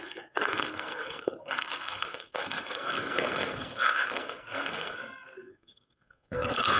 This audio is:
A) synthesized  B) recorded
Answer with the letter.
A